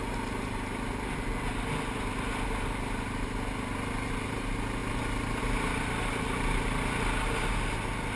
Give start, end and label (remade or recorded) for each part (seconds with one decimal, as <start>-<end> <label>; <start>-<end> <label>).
0.0-8.2 recorded